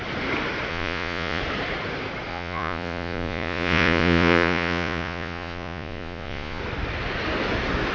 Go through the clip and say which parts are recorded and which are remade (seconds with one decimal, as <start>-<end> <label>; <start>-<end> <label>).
0.0-0.7 recorded; 0.7-1.4 remade; 1.4-2.3 recorded; 2.3-6.6 remade; 6.6-7.9 recorded